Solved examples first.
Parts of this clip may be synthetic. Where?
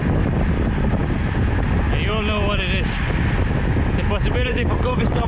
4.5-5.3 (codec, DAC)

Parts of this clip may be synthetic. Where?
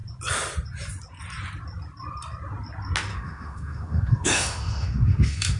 3.1-5.6 (autoencoder, DAC-VAE)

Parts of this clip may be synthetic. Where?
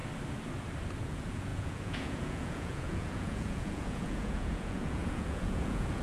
1.0-6.0 (vocoder, Vocos)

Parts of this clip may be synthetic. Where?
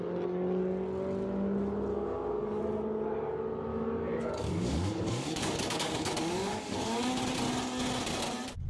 1.9-2.6 (codec, DAC); 3.7-7.2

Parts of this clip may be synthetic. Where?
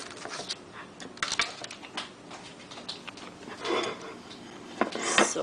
none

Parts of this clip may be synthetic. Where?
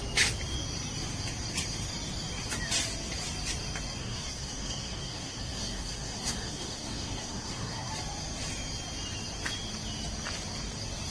4.0-7.9 (codec, SNAC)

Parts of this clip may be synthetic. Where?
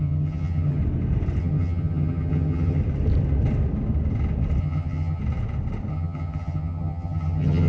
0.0-0.8 (vocoder, HiFi-GAN); 1.4-2.8; 4.6-5.2; 5.9-7.7